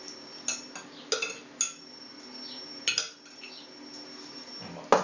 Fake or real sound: real